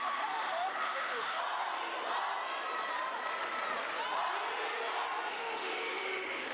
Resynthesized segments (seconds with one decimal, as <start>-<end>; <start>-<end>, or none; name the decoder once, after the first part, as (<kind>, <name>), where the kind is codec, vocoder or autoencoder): 0.0-1.4 (autoencoder, DAC-VAE); 5.3-6.5